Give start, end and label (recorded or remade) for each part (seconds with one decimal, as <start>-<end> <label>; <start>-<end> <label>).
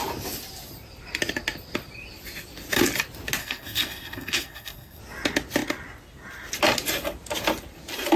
0.0-3.4 recorded; 3.4-5.0 remade; 5.0-8.2 recorded